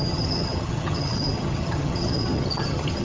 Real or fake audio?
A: fake